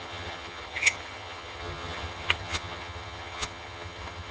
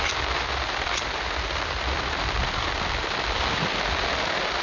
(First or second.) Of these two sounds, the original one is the second